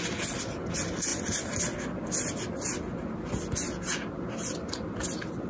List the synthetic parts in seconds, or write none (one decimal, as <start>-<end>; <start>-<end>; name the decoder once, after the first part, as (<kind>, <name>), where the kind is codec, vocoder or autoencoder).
none